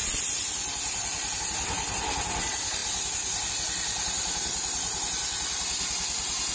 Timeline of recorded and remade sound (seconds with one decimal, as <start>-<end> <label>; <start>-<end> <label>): 0.0-6.5 recorded